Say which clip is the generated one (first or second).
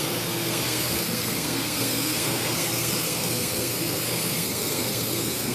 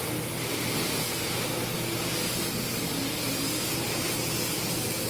first